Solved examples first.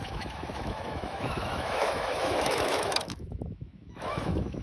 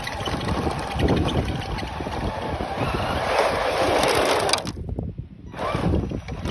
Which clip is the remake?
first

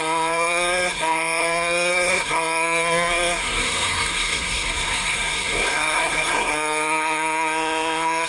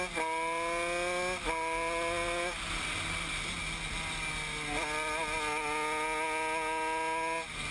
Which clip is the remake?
first